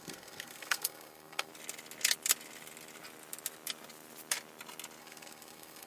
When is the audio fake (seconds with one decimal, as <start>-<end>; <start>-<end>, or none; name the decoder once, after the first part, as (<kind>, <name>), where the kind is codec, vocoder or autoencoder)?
0.0-1.5 (codec, SNAC); 5.0-5.9